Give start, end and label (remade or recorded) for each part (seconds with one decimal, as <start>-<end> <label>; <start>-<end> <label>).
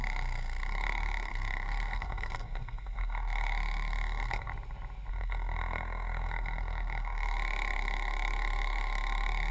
0.0-4.5 remade; 4.5-5.1 recorded; 5.1-9.5 remade